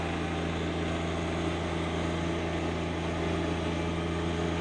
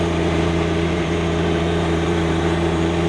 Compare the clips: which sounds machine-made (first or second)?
second